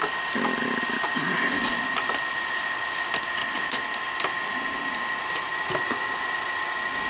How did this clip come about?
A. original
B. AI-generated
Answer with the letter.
A